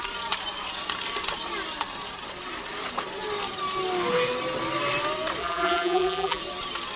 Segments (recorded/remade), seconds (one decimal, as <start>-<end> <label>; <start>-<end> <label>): 0.0-5.4 recorded; 5.4-6.4 remade; 6.4-7.0 recorded